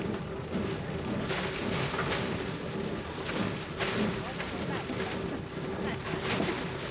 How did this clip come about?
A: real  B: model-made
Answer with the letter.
A